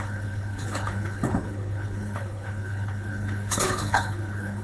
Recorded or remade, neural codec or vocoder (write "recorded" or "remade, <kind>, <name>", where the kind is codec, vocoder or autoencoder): remade, codec, HILCodec